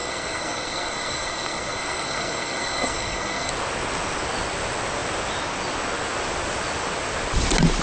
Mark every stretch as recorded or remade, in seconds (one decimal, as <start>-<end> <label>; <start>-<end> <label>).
0.0-3.5 remade; 3.5-7.8 recorded